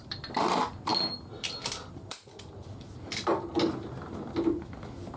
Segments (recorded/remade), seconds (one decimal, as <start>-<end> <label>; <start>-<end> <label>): 0.0-5.2 recorded

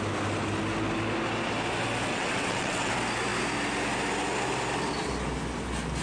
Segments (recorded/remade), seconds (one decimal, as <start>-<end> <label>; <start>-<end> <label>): 0.0-2.1 recorded; 2.1-2.9 remade; 2.9-6.0 recorded

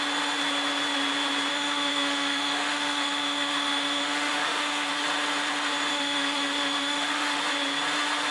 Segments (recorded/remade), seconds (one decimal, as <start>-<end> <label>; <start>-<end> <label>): 0.0-1.5 recorded; 1.5-4.9 remade; 4.9-5.9 recorded; 5.9-7.4 remade; 7.4-8.3 recorded

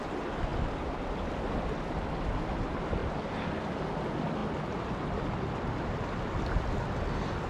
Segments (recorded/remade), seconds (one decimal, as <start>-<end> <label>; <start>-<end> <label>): 0.0-7.5 recorded